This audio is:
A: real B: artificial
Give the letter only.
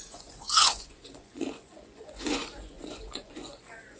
B